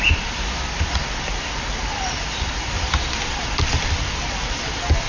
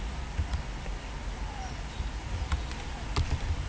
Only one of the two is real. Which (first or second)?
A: second